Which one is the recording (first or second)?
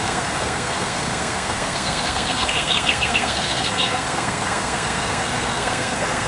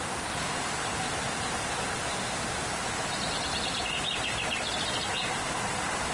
second